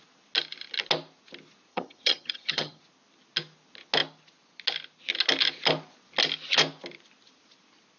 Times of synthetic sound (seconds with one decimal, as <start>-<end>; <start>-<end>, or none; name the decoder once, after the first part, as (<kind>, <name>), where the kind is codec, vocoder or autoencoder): 1.7-2.8 (vocoder, HiFi-GAN)